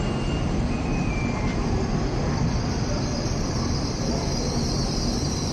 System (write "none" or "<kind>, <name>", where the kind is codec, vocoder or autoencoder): vocoder, BigVGAN v2